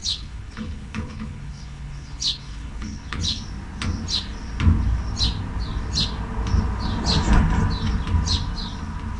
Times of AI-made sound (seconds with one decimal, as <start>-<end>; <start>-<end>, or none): 0.0-3.4